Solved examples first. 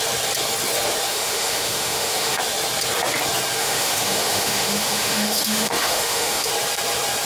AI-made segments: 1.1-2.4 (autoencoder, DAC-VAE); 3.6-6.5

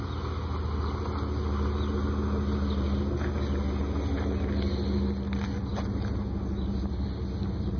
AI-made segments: none